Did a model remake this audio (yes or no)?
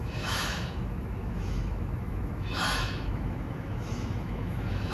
yes